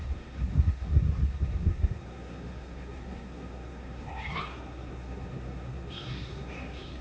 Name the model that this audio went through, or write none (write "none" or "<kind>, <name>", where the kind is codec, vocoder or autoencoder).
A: codec, SNAC